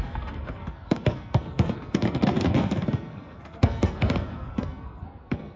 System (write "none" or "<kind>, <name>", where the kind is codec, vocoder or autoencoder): codec, SNAC